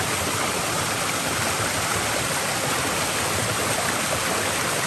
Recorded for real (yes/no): yes